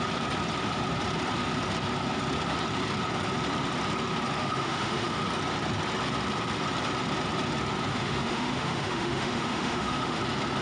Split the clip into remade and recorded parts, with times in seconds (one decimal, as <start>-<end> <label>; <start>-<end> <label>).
0.0-4.4 recorded; 4.4-5.1 remade; 5.1-7.9 recorded; 7.9-10.2 remade; 10.2-10.6 recorded